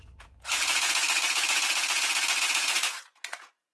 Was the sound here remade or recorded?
remade